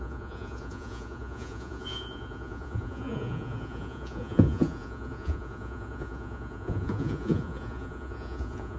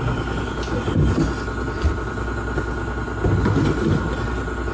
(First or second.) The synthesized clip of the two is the first